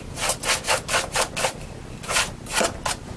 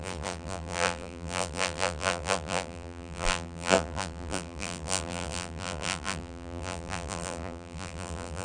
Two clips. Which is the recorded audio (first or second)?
first